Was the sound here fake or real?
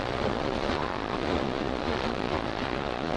fake